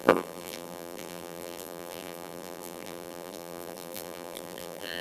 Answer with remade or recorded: remade